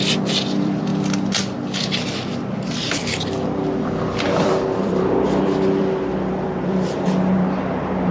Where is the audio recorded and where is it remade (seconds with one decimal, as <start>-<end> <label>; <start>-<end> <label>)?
0.0-0.9 remade; 0.9-3.0 recorded; 3.0-8.1 remade